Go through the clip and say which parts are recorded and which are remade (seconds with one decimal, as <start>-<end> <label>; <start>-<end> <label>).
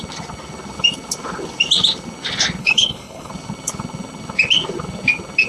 0.0-2.6 recorded; 2.6-3.3 remade; 3.3-5.5 recorded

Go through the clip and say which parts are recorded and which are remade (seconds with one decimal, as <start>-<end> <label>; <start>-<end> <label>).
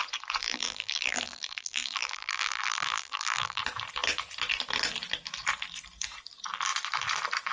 0.0-0.4 recorded; 0.4-3.6 remade; 3.6-7.5 recorded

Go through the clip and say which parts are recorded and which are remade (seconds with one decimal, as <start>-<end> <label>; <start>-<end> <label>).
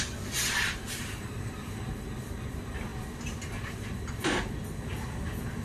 0.0-5.6 recorded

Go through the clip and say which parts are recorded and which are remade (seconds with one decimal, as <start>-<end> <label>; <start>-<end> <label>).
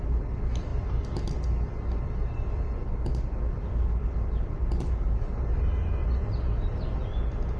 0.0-6.0 recorded; 6.0-6.8 remade; 6.8-7.6 recorded